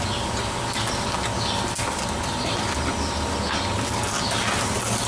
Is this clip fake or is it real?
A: real